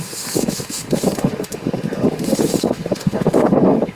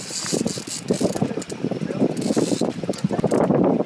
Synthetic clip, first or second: first